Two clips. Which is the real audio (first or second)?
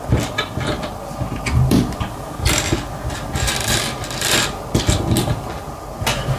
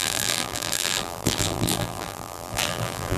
first